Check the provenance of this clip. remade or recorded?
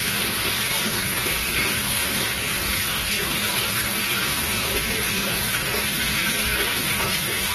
remade